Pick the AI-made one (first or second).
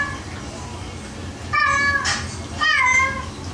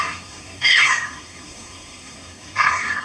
second